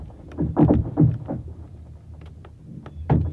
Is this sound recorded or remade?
recorded